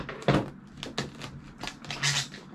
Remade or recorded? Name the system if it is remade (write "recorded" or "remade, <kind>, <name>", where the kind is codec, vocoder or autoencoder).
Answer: recorded